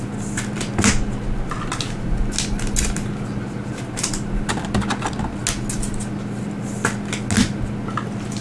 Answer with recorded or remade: recorded